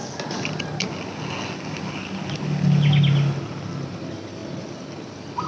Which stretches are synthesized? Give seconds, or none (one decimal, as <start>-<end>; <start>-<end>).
none